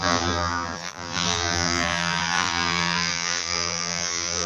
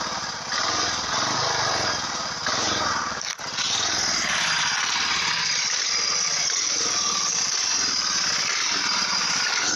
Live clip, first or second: second